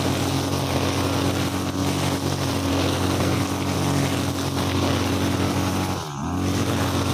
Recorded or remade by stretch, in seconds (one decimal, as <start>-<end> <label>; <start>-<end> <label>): 0.0-2.7 recorded; 2.7-3.4 remade; 3.4-7.1 recorded